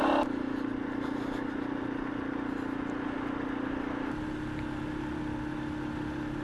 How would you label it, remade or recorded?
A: recorded